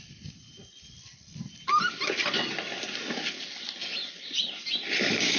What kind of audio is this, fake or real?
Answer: real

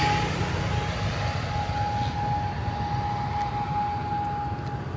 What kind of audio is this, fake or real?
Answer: real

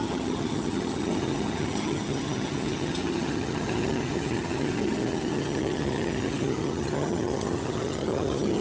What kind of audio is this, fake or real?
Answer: fake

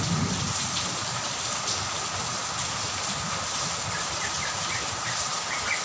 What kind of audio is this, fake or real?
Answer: real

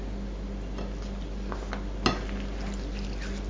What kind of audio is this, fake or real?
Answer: real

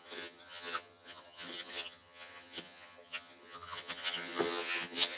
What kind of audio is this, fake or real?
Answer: fake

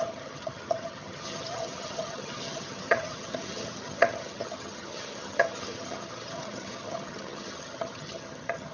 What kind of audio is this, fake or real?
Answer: fake